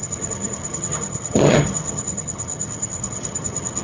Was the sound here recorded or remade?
remade